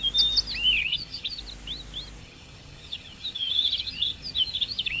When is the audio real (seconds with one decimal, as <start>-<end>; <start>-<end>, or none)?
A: 0.0-0.8; 1.4-2.2